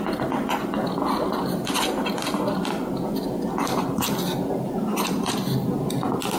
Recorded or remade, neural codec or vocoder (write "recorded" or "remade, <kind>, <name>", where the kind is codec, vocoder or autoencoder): recorded